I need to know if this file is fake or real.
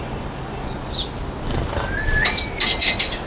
real